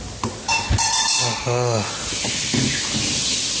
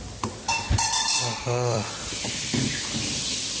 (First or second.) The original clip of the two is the first